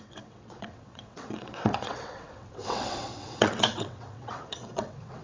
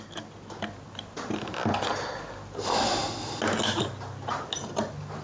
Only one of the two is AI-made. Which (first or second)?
first